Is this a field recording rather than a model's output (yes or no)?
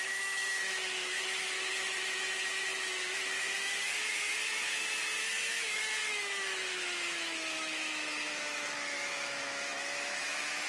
no